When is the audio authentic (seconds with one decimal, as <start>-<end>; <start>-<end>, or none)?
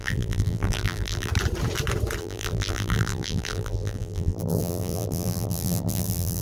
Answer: 1.3-2.2